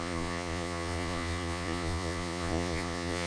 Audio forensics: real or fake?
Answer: fake